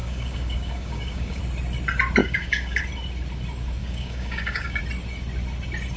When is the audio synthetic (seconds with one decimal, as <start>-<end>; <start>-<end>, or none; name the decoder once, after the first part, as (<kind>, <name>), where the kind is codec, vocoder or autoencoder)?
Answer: 0.0-1.4 (codec, DAC); 2.2-2.8; 3.8-4.8